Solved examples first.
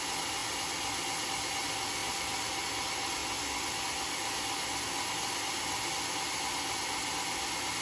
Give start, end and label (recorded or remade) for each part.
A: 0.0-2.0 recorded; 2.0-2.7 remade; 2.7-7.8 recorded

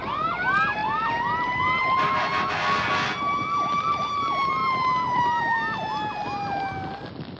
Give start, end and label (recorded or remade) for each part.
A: 0.0-7.4 recorded

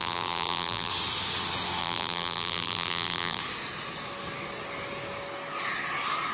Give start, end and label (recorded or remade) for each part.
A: 0.0-0.9 remade; 0.9-1.8 recorded; 1.8-3.4 remade; 3.4-6.3 recorded

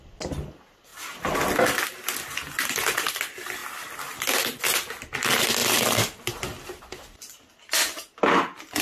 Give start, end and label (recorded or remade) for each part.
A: 0.0-8.8 recorded

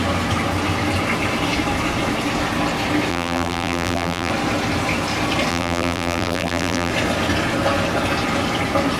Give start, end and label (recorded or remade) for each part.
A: 0.0-3.1 recorded; 3.1-4.3 remade; 4.3-5.5 recorded; 5.5-6.9 remade; 6.9-9.0 recorded

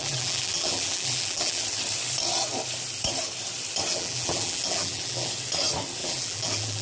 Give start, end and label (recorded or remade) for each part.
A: 0.0-1.6 remade; 1.6-3.9 recorded; 3.9-5.3 remade; 5.3-6.0 recorded; 6.0-6.8 remade

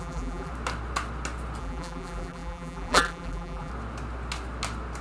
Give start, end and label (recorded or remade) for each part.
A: 0.0-0.5 remade; 0.5-1.6 recorded; 1.6-3.7 remade; 3.7-5.0 recorded

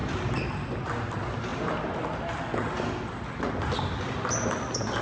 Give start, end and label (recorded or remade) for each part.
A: 0.0-0.5 remade; 0.5-5.0 recorded